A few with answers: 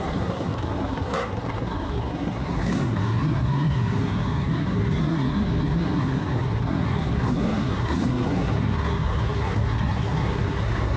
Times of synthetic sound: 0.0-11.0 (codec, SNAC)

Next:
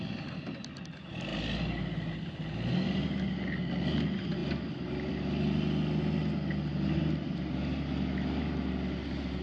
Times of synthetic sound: none